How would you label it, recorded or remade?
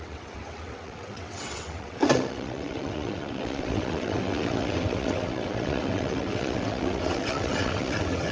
remade